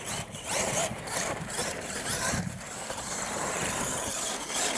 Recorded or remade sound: remade